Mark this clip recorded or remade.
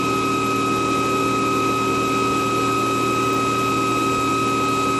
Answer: recorded